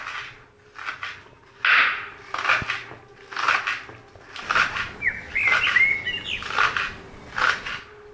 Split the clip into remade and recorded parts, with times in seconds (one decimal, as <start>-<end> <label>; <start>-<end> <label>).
0.0-8.1 recorded